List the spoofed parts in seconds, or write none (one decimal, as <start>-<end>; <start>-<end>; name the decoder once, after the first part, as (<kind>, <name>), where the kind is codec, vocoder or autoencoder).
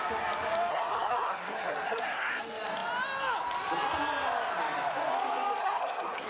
0.7-2.4 (codec, SNAC); 5.6-6.3